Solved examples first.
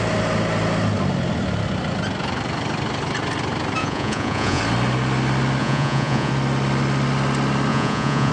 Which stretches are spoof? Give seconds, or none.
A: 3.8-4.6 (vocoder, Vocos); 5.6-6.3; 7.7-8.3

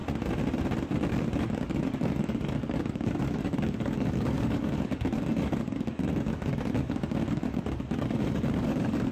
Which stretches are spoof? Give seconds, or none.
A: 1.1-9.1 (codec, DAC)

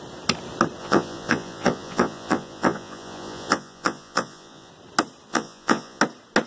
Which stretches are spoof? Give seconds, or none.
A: 0.8-4.7 (vocoder, Vocos); 5.3-6.0